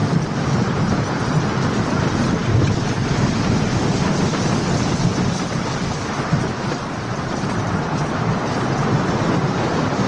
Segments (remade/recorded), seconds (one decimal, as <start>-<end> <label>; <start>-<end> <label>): 0.0-10.1 recorded